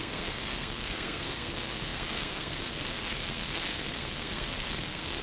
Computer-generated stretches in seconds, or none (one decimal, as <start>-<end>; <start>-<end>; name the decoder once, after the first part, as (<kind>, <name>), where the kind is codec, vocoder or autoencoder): 0.0-5.2 (codec, SNAC)